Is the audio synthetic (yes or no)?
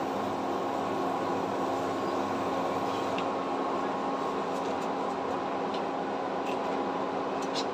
no